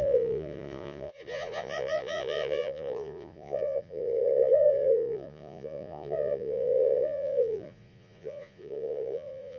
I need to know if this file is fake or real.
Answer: fake